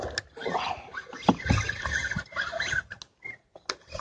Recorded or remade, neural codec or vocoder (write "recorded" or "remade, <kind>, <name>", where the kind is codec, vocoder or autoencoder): recorded